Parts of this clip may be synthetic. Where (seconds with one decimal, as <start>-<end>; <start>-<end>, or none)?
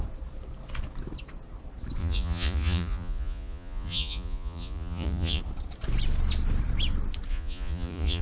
2.0-5.4; 7.3-8.2